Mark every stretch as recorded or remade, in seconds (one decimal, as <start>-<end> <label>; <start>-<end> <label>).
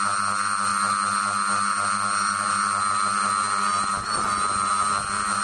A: 0.0-5.4 recorded